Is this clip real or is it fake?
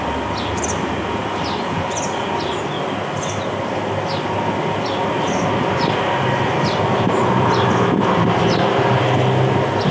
real